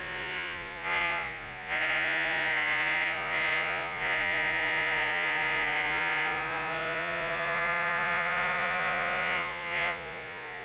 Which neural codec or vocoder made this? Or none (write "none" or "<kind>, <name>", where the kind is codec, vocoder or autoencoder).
vocoder, Vocos